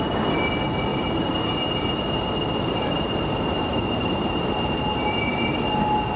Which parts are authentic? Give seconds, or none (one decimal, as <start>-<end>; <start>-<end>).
0.0-0.9; 2.0-3.7; 4.4-6.2